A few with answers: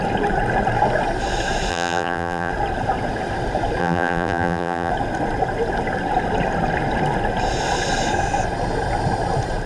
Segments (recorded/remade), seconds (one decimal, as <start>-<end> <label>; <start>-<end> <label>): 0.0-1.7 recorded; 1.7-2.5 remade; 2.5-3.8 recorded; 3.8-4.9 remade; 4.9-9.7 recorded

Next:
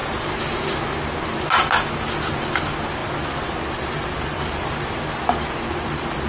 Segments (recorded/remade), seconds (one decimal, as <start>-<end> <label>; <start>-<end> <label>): 0.0-3.0 recorded; 3.0-5.0 remade; 5.0-6.3 recorded

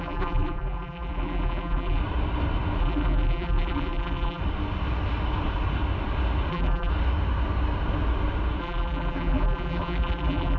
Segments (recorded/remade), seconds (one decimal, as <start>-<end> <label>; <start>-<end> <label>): 0.0-2.0 remade; 2.0-2.8 recorded; 2.8-4.4 remade; 4.4-6.5 recorded; 6.5-6.9 remade; 6.9-8.6 recorded; 8.6-10.6 remade

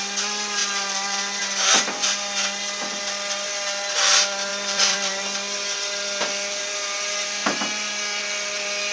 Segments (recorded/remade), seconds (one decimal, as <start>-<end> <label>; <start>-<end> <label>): 0.0-0.6 recorded; 0.6-1.4 remade; 1.4-4.5 recorded; 4.5-6.6 remade; 6.6-8.9 recorded

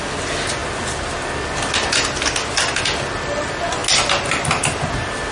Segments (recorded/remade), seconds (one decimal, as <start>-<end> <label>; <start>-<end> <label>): 0.0-5.3 recorded

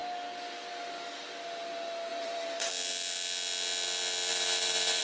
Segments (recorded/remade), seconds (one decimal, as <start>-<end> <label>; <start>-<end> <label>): 0.0-2.1 recorded; 2.1-2.7 remade; 2.7-4.3 recorded; 4.3-5.0 remade

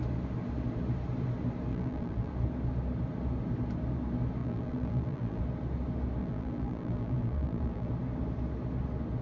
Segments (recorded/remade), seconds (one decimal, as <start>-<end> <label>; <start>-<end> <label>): 0.0-1.7 recorded; 1.7-2.3 remade; 2.3-4.4 recorded; 4.4-5.4 remade; 5.4-6.2 recorded; 6.2-7.9 remade; 7.9-9.2 recorded